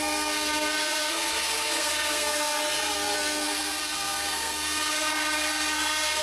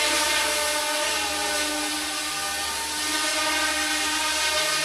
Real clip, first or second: second